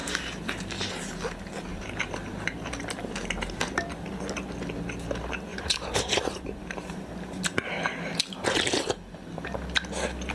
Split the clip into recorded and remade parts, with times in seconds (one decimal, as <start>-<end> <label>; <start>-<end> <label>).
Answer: 0.0-0.9 remade; 0.9-1.7 recorded; 1.7-2.9 remade; 2.9-5.5 recorded; 5.5-7.7 remade; 7.7-10.3 recorded